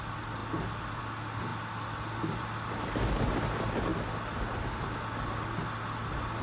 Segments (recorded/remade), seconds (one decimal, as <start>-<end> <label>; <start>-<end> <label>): 0.0-6.4 recorded